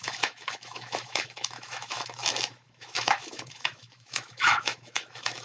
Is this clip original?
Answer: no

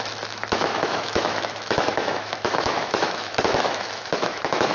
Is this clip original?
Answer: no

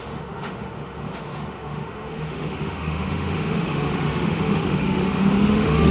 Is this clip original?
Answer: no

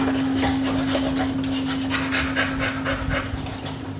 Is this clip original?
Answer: yes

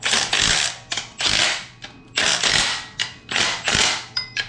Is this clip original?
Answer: yes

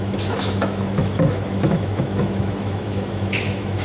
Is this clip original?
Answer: no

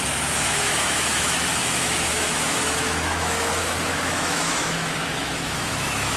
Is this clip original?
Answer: no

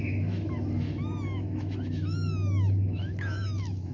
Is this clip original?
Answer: no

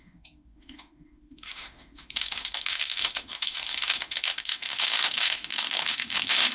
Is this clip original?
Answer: no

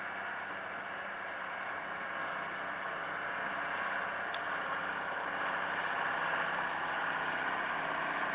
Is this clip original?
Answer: yes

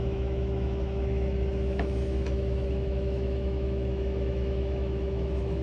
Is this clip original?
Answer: no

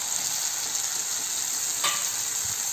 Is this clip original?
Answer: yes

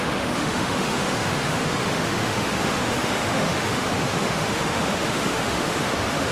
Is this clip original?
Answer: no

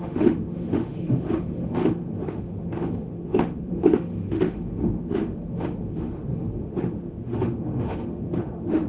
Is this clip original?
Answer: no